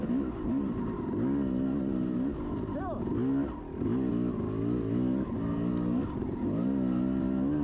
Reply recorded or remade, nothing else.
recorded